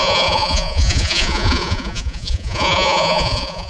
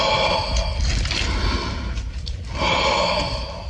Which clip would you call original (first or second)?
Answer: second